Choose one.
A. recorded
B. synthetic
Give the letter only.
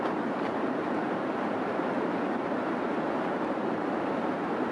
B